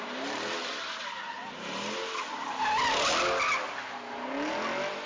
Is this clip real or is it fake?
real